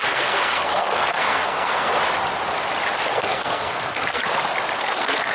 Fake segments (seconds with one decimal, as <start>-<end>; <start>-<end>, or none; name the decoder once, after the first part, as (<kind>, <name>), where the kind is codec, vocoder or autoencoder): 0.0-2.0 (codec, SNAC); 3.1-4.2; 4.8-5.3